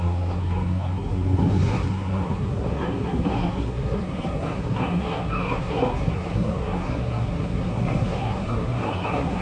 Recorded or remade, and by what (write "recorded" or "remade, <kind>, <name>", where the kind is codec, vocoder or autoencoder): remade, codec, SNAC